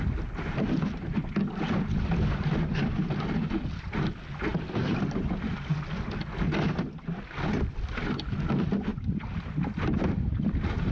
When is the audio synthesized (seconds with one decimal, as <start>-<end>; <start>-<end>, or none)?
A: none